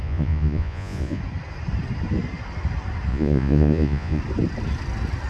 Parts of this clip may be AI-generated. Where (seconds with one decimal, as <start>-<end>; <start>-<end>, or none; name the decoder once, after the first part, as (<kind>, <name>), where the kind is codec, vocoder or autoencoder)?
0.0-1.2 (vocoder, Vocos); 3.1-4.2